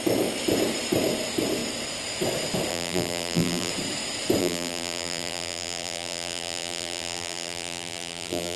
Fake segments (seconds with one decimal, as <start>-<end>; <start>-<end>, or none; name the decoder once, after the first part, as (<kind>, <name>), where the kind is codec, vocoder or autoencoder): 2.7-3.7 (vocoder, BigVGAN v2); 4.4-8.6